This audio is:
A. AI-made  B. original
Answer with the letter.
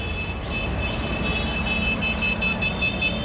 B